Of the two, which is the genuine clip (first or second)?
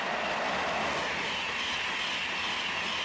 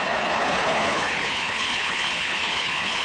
first